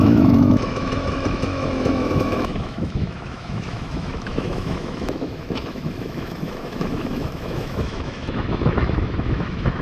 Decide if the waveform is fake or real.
fake